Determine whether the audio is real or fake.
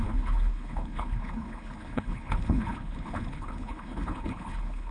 fake